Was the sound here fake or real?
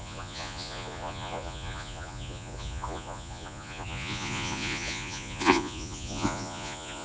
fake